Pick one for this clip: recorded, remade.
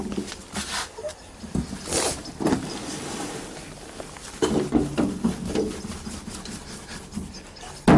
recorded